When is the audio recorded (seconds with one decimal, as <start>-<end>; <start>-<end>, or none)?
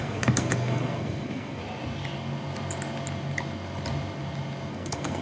1.6-4.7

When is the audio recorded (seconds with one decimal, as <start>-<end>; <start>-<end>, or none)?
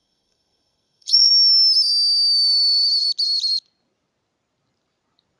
1.3-5.4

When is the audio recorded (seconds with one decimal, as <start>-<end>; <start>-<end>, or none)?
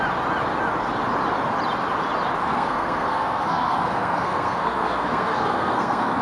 0.0-2.4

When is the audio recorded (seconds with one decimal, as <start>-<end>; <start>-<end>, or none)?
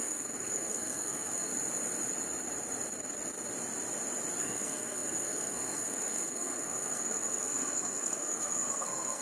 1.5-4.4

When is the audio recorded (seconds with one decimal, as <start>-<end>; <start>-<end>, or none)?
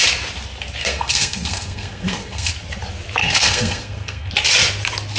0.0-0.8; 2.5-3.2; 4.3-5.2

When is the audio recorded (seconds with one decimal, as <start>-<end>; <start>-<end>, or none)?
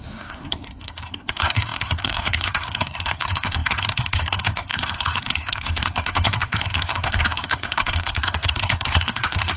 none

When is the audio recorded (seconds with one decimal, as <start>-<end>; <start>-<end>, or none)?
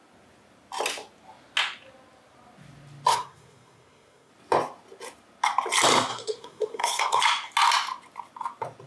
0.0-3.1; 4.3-6.1; 7.2-8.9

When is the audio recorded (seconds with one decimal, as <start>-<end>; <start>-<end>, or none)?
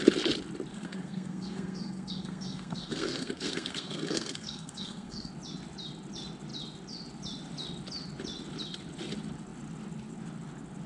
0.0-0.7; 5.3-10.9